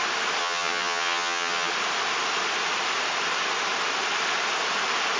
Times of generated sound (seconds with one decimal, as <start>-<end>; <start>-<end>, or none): 0.4-1.7